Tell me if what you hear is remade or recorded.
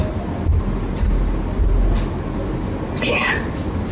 recorded